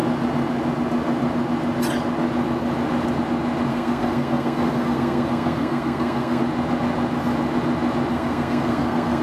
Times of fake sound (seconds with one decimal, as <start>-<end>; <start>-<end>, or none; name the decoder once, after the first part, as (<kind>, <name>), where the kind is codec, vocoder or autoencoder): 3.7-6.4 (codec, SNAC); 8.1-9.2